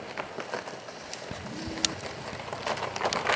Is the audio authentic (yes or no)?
yes